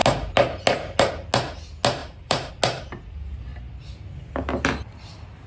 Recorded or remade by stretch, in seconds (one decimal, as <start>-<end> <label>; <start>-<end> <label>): 0.0-2.0 recorded; 2.0-2.5 remade; 2.5-5.5 recorded